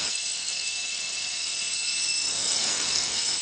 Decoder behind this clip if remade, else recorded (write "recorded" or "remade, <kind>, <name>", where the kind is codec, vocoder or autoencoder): remade, codec, SNAC